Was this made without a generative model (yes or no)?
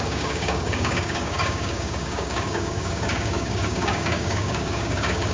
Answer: no